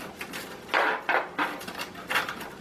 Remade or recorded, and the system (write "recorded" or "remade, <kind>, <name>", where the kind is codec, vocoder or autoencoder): remade, vocoder, BigVGAN v2